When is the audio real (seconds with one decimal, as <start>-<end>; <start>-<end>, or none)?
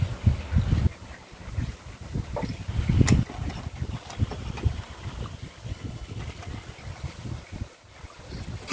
0.0-5.7; 6.2-8.7